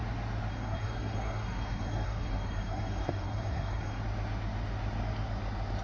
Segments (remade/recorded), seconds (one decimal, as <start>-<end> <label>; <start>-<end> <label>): 0.0-0.5 recorded; 0.5-4.0 remade; 4.0-5.8 recorded